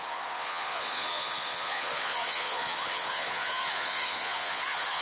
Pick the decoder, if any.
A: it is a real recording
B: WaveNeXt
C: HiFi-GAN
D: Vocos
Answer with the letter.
D